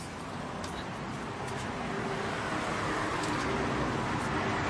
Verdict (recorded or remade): recorded